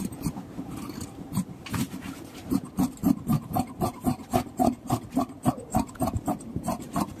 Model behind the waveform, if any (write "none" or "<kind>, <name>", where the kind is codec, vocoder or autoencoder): vocoder, BigVGAN v2